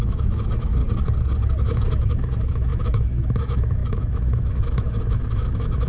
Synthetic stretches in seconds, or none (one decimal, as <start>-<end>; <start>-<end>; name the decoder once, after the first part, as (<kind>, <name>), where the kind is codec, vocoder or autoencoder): 0.0-0.8 (autoencoder, DAC-VAE); 1.7-5.9

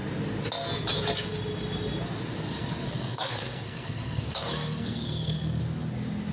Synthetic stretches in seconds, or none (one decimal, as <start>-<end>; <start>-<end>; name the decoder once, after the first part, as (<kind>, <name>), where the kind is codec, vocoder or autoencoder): 2.6-5.6 (codec, SNAC)

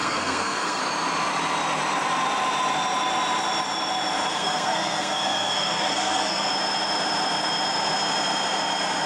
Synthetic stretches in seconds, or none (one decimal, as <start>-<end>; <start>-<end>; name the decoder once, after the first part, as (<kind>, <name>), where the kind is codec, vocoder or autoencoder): 0.0-0.8 (codec, SNAC); 4.3-6.5

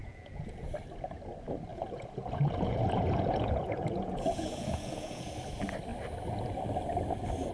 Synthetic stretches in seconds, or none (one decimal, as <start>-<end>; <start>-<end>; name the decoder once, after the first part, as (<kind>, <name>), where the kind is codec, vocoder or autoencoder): 0.0-0.7 (vocoder, Vocos); 1.7-5.3

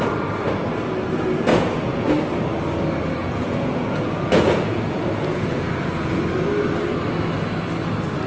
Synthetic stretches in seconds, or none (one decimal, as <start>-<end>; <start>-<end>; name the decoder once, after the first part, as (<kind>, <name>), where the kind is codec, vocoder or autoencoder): 1.5-2.1 (vocoder, Vocos); 3.2-6.2

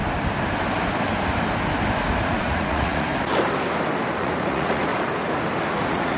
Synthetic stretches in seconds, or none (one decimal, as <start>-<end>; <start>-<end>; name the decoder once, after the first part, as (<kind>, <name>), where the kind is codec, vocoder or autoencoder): 2.2-3.1 (vocoder, Vocos); 4.1-4.9; 5.7-6.2